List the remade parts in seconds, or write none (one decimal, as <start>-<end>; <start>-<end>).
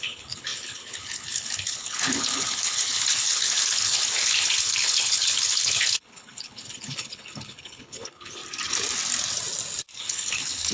0.0-8.4; 10.0-10.7